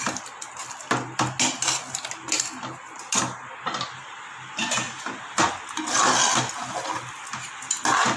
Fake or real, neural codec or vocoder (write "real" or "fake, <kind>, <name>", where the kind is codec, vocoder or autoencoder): real